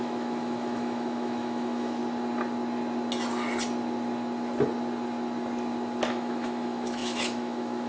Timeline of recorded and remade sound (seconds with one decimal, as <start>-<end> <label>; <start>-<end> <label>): 0.0-2.0 remade; 2.0-6.1 recorded; 6.1-7.9 remade